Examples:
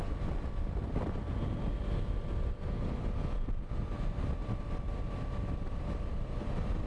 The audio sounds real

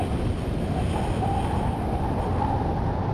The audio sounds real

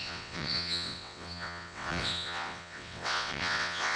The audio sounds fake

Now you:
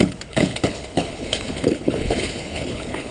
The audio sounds fake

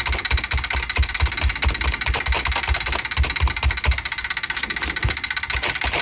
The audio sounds real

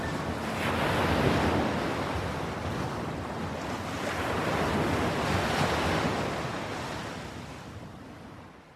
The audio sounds real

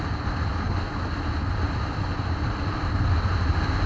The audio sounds real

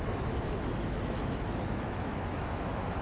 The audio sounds fake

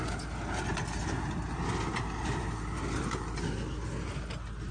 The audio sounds real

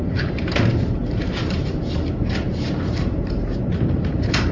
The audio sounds fake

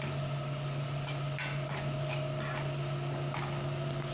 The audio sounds real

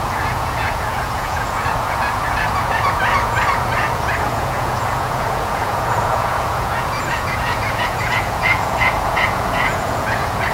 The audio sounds fake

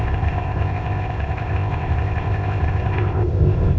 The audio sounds fake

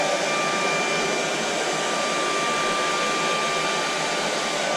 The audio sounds real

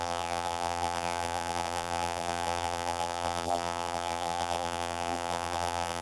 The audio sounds fake